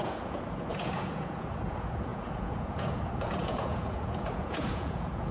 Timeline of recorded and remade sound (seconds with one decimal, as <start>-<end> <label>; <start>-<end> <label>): 0.0-5.3 remade